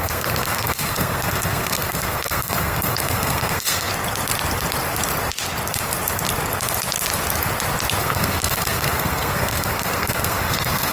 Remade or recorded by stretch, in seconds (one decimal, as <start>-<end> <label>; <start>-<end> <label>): 0.0-3.9 remade; 3.9-8.0 recorded; 8.0-10.9 remade